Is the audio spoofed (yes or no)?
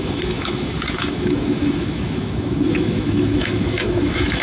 yes